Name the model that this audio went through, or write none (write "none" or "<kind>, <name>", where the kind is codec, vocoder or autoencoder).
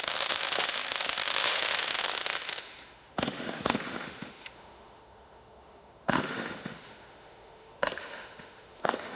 autoencoder, DAC-VAE